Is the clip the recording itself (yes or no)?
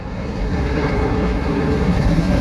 no